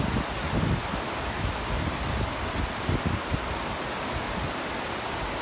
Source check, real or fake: real